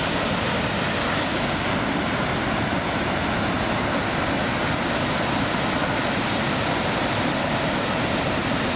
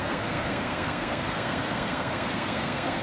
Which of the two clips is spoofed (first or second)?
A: second